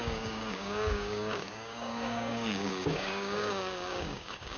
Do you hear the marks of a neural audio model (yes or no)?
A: yes